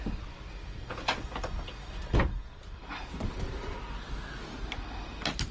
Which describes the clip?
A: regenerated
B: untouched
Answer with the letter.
B